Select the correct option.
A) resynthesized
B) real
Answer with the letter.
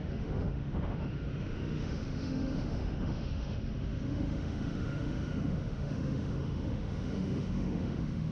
A